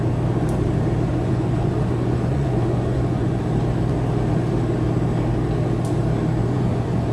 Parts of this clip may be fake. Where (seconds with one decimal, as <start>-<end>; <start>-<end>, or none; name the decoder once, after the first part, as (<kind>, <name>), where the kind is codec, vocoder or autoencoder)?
1.1-3.4 (vocoder, Vocos); 6.4-7.1